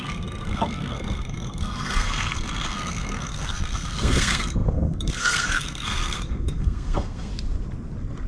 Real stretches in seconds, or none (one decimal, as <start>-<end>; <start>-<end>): 7.3-8.3